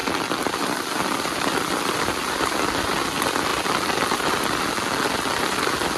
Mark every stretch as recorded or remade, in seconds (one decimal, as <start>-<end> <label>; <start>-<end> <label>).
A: 0.0-6.0 recorded